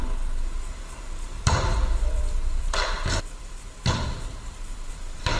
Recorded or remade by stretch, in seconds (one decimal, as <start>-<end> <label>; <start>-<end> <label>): 0.0-0.8 recorded; 0.8-1.7 remade; 1.7-4.9 recorded; 4.9-5.4 remade

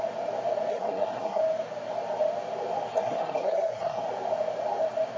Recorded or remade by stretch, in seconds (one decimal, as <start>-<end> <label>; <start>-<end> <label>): 0.0-0.7 recorded; 0.7-1.4 remade; 1.4-2.9 recorded; 2.9-4.0 remade; 4.0-5.2 recorded

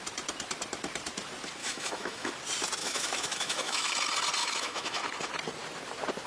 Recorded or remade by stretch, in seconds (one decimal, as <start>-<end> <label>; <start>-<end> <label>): 0.0-1.6 recorded; 1.6-2.3 remade; 2.3-2.8 recorded; 2.8-3.9 remade; 3.9-4.4 recorded; 4.4-5.0 remade; 5.0-6.3 recorded

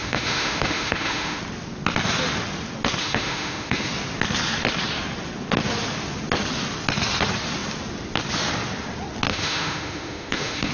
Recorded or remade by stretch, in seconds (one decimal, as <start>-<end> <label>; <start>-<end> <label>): 0.0-1.4 remade; 1.4-3.0 recorded; 3.0-3.9 remade; 3.9-9.3 recorded; 9.3-10.7 remade

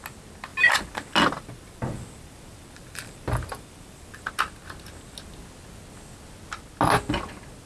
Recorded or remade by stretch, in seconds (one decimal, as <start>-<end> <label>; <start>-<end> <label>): 0.0-0.5 recorded; 0.5-4.3 remade; 4.3-7.7 recorded

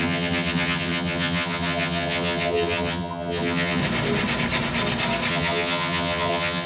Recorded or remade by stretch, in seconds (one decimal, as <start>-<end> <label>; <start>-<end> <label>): 0.0-3.8 remade; 3.8-5.3 recorded; 5.3-6.7 remade

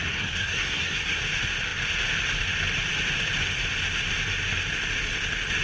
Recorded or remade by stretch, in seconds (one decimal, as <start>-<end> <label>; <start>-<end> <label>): 0.0-1.2 remade; 1.2-5.6 recorded

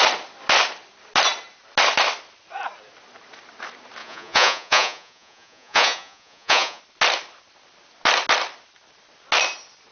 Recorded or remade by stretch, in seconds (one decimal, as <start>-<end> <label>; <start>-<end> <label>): 0.0-4.0 recorded; 4.0-6.8 remade; 6.8-9.9 recorded